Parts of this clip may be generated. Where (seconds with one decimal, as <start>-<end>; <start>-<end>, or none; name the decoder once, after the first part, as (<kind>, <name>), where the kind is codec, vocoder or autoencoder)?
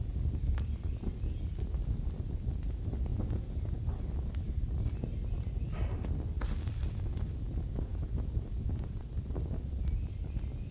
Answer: 3.1-3.9 (vocoder, Vocos); 7.9-9.0